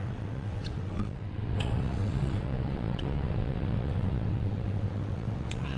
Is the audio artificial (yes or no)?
yes